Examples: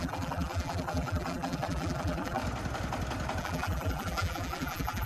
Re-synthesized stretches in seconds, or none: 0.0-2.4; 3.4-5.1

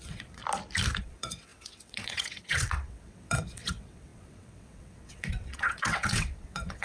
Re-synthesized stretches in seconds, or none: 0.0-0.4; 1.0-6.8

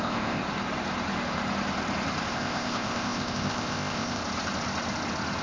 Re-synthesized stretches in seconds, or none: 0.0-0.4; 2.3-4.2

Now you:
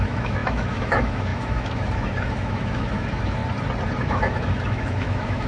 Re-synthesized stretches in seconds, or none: 0.0-3.4; 4.0-5.5